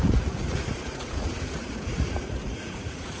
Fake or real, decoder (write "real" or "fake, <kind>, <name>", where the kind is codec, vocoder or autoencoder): fake, vocoder, Vocos